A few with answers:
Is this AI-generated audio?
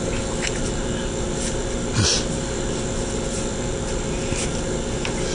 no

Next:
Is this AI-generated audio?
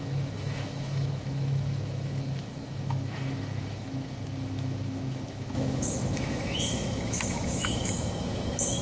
yes